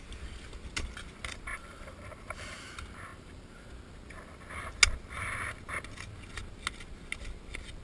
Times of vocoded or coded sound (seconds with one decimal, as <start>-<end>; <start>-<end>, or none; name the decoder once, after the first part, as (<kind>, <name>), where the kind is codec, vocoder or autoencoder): 1.5-2.7 (vocoder, BigVGAN v2); 3.1-3.7